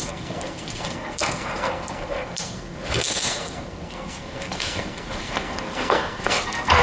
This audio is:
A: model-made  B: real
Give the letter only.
A